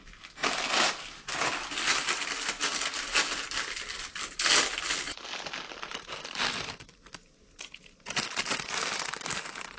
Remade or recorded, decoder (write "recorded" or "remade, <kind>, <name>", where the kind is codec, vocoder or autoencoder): recorded